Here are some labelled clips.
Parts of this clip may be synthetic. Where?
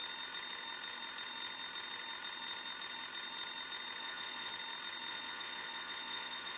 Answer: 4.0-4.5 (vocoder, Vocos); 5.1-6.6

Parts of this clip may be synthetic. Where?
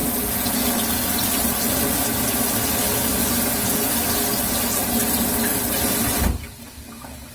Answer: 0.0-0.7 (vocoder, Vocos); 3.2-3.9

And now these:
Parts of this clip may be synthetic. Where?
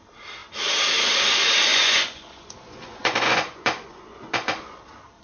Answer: 1.7-4.8 (vocoder, Vocos)